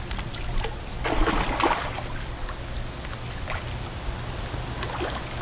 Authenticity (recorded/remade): recorded